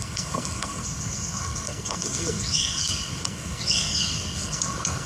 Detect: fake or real fake